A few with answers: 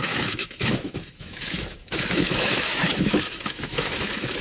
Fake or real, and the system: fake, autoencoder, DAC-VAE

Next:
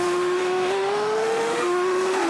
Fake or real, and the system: fake, autoencoder, DAC-VAE